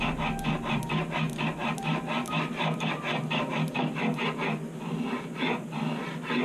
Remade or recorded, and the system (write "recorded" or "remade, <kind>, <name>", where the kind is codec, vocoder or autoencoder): recorded